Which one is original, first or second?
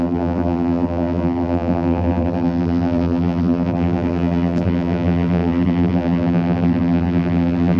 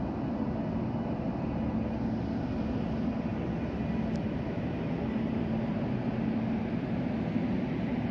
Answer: second